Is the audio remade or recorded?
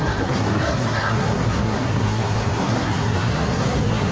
remade